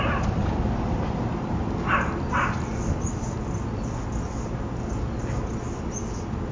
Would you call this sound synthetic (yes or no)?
no